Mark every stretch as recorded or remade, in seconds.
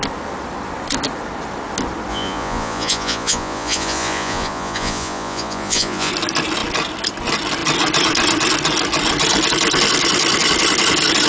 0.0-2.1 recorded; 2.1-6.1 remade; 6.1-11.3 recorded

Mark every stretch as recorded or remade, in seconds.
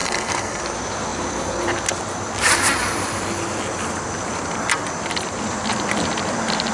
0.0-0.6 remade; 0.6-6.7 recorded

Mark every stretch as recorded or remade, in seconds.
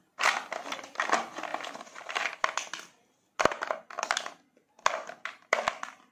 0.0-6.1 recorded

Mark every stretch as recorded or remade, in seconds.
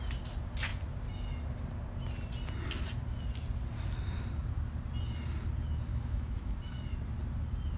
0.0-5.9 recorded; 5.9-6.5 remade; 6.5-7.8 recorded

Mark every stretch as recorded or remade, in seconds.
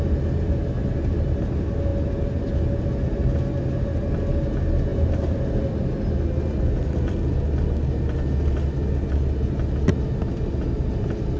0.0-4.9 recorded; 4.9-5.5 remade; 5.5-11.4 recorded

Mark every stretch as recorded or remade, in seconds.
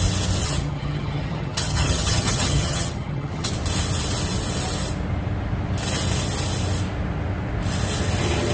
0.0-0.4 recorded; 0.4-3.5 remade; 3.5-8.5 recorded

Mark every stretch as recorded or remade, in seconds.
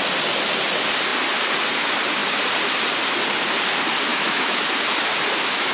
0.0-4.1 recorded; 4.1-4.6 remade; 4.6-5.7 recorded